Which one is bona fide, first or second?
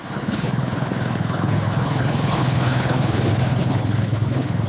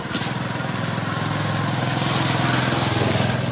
second